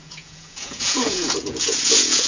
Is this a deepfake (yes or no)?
yes